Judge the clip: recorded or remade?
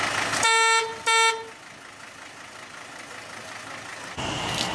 recorded